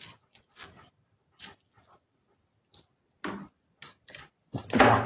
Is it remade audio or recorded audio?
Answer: recorded